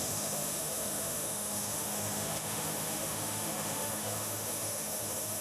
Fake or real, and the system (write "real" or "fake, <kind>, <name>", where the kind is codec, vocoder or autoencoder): fake, autoencoder, DAC-VAE